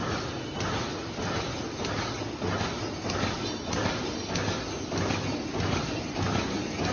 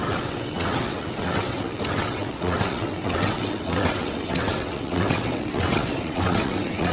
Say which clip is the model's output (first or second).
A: second